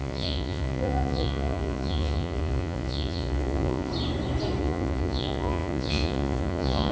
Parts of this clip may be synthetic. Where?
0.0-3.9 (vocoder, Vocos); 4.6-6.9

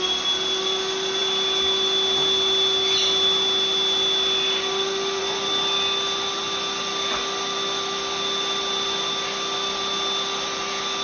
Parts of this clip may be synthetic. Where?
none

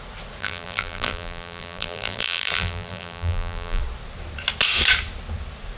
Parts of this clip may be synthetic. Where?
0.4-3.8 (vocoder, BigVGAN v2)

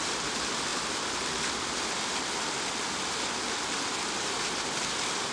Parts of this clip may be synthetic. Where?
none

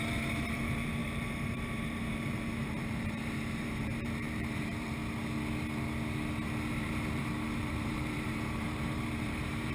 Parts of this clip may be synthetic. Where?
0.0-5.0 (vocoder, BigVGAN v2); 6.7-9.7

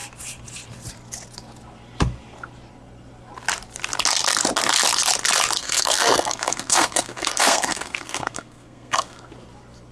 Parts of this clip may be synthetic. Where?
5.6-9.3 (codec, SNAC)